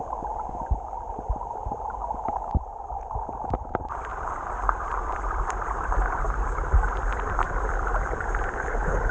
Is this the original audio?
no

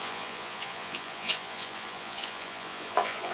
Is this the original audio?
no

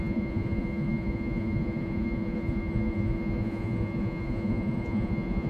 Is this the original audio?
no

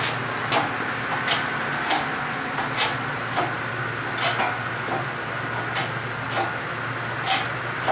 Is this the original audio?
yes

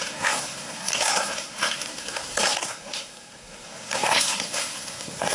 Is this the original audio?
no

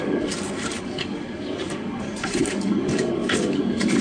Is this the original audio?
no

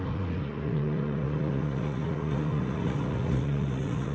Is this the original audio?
no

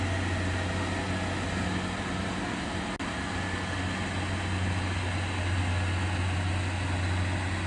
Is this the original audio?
yes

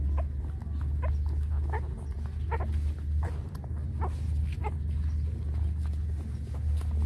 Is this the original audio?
yes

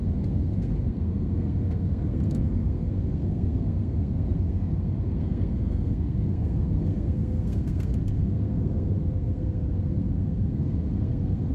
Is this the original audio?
no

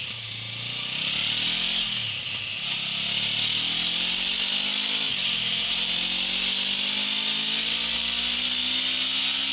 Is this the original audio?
yes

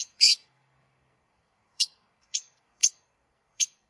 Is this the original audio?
no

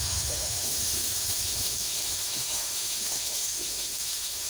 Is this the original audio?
no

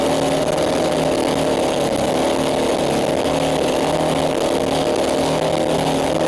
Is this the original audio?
yes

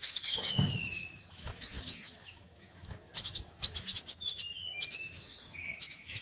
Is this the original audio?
no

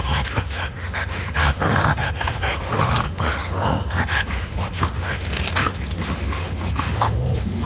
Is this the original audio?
no